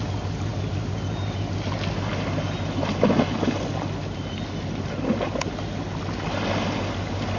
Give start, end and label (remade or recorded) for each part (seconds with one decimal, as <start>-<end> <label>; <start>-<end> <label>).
0.0-7.4 recorded